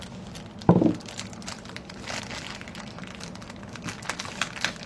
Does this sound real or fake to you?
real